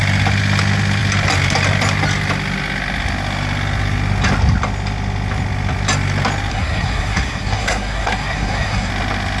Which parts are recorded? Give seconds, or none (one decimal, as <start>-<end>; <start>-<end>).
0.0-6.5; 8.9-9.4